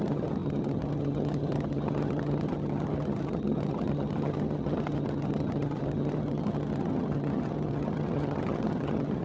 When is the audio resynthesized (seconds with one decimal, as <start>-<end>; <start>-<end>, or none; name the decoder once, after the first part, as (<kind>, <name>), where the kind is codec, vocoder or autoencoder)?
0.0-9.2 (vocoder, HiFi-GAN)